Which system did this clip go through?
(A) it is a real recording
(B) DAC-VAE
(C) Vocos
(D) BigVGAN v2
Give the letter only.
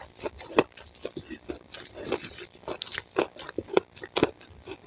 A